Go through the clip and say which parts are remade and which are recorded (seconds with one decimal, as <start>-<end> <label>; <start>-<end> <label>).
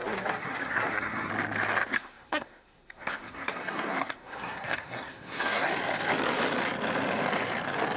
0.0-1.3 remade; 1.3-1.9 recorded; 1.9-5.7 remade; 5.7-8.0 recorded